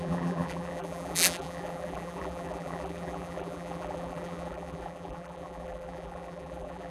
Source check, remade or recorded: remade